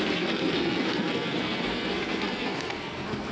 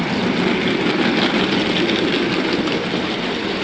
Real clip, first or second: second